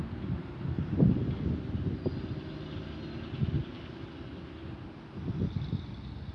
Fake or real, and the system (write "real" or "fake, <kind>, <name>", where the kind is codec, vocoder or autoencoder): real